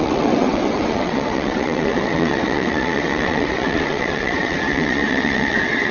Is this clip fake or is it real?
fake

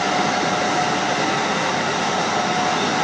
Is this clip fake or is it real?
real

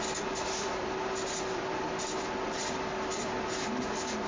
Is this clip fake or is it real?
real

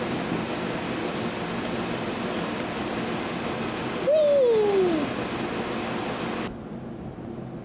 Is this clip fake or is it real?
real